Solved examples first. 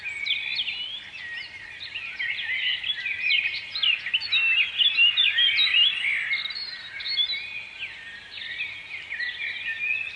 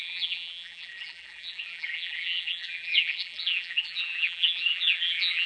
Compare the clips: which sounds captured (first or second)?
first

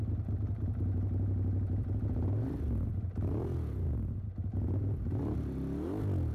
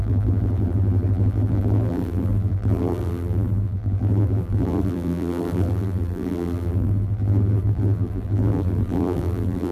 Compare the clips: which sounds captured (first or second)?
first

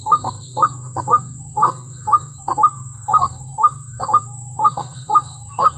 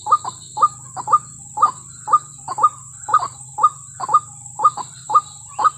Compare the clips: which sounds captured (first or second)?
second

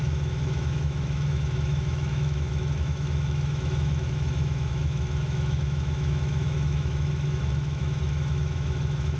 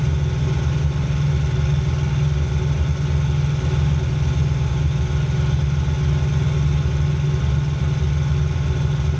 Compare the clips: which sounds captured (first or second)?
second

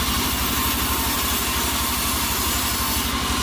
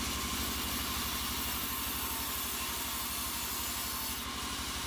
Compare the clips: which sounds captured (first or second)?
second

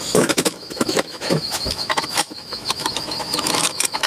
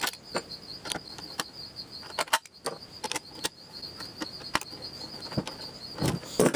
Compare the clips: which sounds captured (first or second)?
second